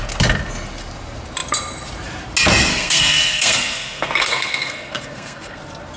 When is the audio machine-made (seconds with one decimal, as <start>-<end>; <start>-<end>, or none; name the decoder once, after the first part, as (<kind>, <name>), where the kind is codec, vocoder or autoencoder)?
2.7-5.6 (codec, SNAC)